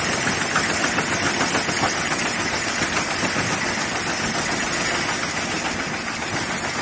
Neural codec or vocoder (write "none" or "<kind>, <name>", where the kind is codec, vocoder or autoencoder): none